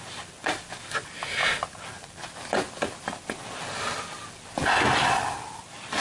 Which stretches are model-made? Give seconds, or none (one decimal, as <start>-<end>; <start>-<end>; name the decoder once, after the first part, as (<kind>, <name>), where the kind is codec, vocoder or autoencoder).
none

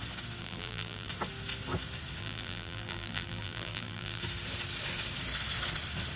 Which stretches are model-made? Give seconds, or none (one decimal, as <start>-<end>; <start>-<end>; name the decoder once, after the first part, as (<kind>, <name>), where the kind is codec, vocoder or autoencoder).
0.4-1.1 (vocoder, BigVGAN v2); 2.2-4.2

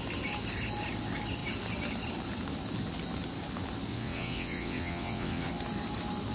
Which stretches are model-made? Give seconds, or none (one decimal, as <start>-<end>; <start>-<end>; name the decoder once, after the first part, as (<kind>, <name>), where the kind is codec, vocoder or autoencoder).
3.9-5.5 (vocoder, WaveNeXt)

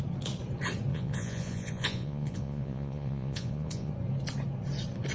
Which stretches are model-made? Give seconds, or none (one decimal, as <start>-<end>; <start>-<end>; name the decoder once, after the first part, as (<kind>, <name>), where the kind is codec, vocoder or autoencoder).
0.9-3.9 (vocoder, Vocos)

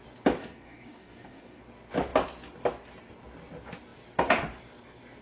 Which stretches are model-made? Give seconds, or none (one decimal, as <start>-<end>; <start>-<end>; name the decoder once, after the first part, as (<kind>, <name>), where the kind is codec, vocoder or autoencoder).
0.4-1.6 (codec, DAC)